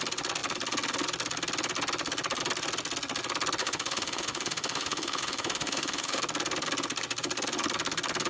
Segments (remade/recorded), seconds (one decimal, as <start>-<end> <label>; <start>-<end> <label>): 0.0-3.6 recorded; 3.6-6.2 remade; 6.2-8.3 recorded